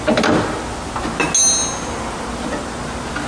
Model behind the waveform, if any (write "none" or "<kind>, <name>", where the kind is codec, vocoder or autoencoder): none